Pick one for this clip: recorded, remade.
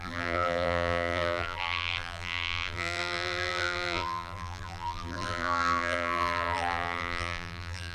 remade